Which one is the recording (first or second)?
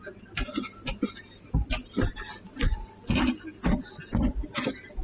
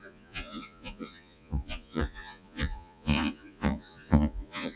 first